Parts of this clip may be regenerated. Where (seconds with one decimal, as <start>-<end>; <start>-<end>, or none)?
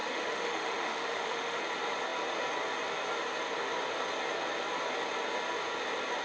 0.0-1.6